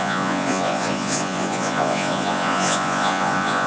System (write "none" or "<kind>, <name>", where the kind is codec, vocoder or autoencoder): vocoder, Vocos